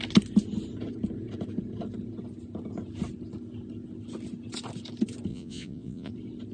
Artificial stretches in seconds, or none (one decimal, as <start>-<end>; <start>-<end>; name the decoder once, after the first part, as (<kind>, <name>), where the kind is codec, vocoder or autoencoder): 5.3-6.1 (vocoder, Vocos)